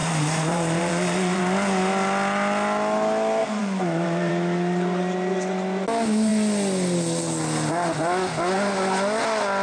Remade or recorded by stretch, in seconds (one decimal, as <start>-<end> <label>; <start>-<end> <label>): 0.0-1.4 remade; 1.4-3.4 recorded; 3.4-4.3 remade; 4.3-9.6 recorded